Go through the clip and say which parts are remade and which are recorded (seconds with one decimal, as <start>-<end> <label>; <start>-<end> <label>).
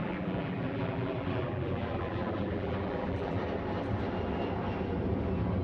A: 0.0-3.4 remade; 3.4-5.6 recorded